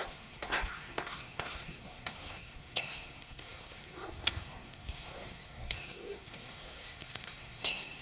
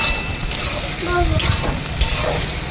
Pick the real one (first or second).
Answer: second